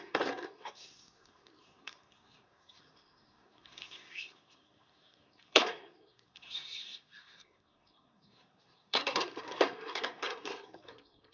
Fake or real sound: fake